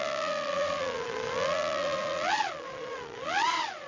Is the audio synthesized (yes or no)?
yes